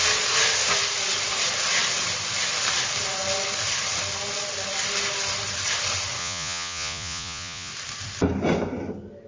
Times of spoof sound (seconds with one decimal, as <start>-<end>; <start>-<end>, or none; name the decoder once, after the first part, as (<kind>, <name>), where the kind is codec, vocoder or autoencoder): 6.2-7.7 (vocoder, Vocos)

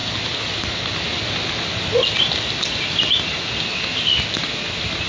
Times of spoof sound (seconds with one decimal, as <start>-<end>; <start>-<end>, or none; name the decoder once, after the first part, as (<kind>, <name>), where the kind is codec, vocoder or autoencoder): none